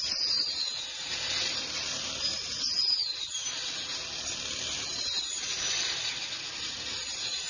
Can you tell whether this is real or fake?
real